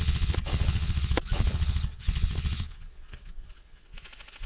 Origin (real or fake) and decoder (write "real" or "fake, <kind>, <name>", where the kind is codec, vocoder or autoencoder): fake, vocoder, Vocos